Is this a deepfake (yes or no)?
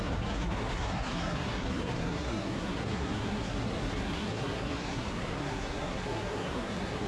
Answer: yes